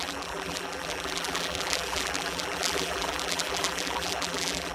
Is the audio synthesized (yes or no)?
yes